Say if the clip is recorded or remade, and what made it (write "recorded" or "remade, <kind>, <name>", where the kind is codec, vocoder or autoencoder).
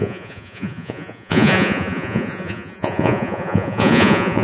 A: remade, vocoder, Vocos